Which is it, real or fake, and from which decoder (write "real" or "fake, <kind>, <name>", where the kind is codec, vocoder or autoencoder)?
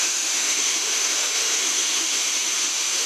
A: fake, autoencoder, DAC-VAE